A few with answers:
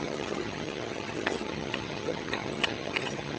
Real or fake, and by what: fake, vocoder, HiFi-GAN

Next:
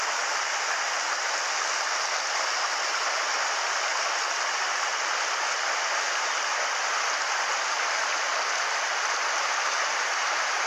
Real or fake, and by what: real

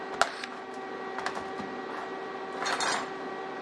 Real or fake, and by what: real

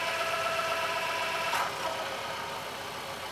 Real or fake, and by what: fake, vocoder, BigVGAN v2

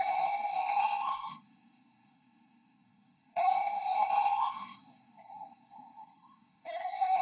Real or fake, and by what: fake, codec, SNAC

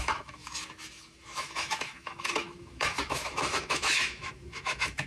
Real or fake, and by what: fake, autoencoder, DAC-VAE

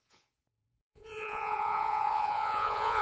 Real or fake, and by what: fake, vocoder, Vocos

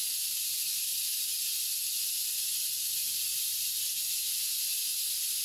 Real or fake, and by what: real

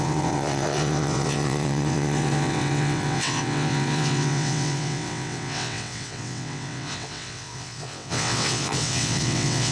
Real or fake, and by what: fake, vocoder, WaveNeXt